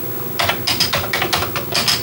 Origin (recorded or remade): recorded